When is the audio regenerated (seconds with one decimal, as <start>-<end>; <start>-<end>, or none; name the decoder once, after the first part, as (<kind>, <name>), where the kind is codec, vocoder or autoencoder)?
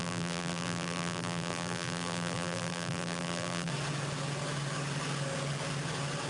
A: 0.0-3.7 (vocoder, BigVGAN v2)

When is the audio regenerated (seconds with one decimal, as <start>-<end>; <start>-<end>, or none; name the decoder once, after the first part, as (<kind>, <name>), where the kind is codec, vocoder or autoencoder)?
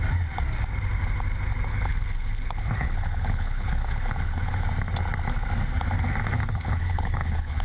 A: 1.7-4.5 (codec, HILCodec); 6.4-7.6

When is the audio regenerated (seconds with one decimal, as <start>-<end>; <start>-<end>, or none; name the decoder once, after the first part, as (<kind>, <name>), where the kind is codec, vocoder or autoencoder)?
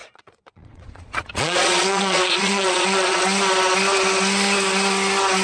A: 0.0-3.2 (vocoder, Vocos)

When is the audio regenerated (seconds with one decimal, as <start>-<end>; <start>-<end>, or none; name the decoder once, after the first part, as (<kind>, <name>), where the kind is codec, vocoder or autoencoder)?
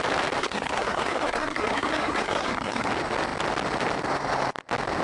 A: 0.4-2.9 (codec, SNAC)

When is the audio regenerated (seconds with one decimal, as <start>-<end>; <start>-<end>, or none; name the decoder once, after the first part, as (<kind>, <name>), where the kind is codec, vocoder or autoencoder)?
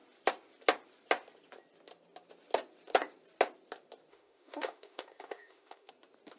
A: 4.1-5.9 (autoencoder, DAC-VAE)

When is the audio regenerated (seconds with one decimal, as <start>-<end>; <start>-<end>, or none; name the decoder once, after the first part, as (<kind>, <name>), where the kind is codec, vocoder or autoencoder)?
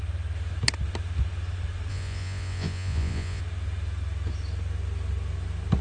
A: 1.9-3.4 (vocoder, Vocos)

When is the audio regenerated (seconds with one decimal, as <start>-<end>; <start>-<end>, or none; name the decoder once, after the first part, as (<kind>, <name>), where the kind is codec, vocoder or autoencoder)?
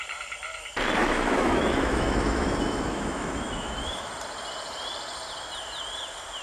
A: 1.0-4.1 (autoencoder, DAC-VAE)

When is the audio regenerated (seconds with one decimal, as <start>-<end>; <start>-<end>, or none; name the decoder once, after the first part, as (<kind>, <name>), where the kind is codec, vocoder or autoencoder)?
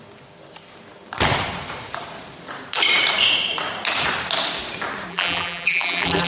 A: 5.1-6.3 (vocoder, BigVGAN v2)